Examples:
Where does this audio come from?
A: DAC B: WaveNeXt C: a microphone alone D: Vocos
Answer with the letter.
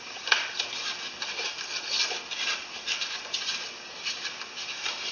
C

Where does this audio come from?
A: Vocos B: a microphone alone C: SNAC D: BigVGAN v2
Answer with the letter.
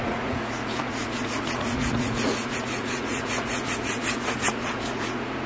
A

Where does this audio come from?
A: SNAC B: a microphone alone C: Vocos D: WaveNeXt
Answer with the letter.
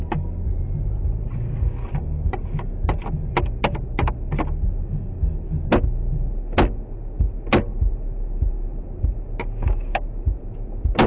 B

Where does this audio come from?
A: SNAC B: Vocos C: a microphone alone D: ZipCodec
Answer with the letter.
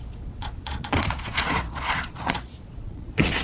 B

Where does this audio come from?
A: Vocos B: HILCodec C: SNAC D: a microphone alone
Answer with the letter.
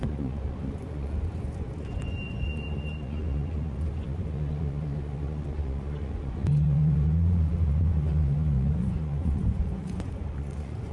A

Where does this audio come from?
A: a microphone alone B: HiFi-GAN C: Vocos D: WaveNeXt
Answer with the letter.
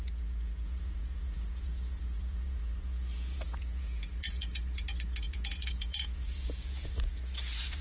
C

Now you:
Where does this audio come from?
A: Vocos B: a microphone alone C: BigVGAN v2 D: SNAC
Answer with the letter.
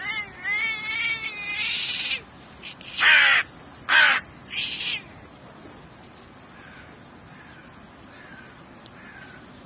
B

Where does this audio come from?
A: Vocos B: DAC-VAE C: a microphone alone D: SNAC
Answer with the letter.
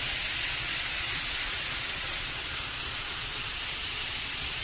A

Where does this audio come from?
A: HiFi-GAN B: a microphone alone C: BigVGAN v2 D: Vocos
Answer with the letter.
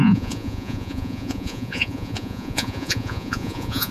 D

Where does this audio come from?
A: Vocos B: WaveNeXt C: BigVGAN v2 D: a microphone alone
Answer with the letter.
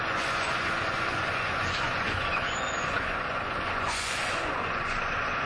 A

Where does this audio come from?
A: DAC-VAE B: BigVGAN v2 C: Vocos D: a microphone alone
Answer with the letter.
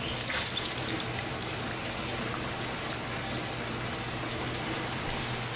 D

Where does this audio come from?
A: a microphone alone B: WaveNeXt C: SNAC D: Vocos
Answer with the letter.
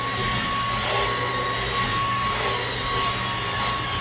A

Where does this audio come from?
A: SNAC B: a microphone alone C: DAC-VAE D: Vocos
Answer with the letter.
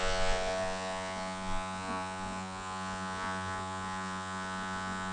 D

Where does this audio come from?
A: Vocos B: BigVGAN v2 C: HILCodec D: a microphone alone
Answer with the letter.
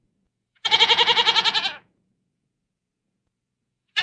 A